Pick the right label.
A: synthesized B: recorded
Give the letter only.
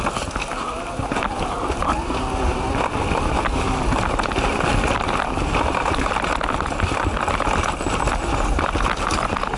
B